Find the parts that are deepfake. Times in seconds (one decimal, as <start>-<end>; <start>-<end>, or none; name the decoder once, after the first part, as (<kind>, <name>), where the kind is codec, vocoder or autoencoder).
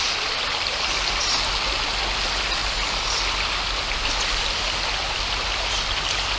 none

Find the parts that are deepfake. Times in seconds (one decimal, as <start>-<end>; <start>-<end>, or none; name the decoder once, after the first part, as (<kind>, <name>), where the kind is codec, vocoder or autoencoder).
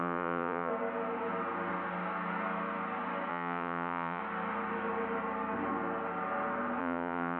0.0-0.7 (vocoder, Vocos); 3.3-4.2; 6.8-7.4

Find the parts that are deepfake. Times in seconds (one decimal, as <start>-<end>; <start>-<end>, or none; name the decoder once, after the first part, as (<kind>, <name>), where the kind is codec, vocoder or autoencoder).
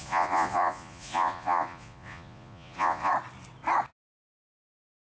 0.0-3.1 (vocoder, Vocos)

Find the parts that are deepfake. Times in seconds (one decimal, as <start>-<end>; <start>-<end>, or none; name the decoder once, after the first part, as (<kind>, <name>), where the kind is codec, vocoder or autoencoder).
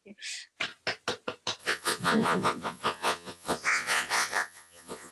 1.6-5.1 (vocoder, Vocos)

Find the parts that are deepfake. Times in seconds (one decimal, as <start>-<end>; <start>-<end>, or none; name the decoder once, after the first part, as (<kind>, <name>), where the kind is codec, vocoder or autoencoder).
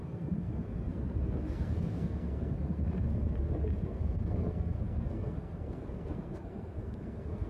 0.0-7.5 (codec, SNAC)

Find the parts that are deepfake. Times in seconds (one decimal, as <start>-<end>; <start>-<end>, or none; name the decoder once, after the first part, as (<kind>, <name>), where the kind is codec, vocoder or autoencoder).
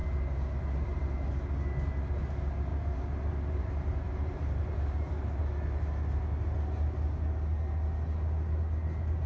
2.7-5.1 (vocoder, BigVGAN v2)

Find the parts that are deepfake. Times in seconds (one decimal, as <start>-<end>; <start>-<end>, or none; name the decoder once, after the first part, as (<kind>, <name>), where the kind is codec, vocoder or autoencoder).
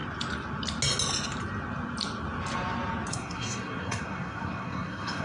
3.1-5.2 (codec, SNAC)